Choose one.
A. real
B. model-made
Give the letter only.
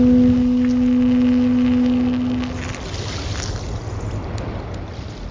A